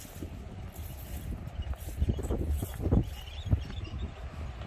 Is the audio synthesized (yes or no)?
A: no